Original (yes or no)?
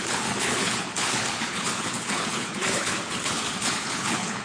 no